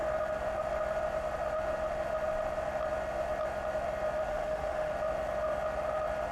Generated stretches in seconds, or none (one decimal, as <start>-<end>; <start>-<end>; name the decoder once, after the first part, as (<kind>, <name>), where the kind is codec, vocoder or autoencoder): 4.3-4.9 (autoencoder, DAC-VAE)